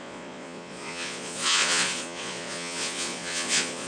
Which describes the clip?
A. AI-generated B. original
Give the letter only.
A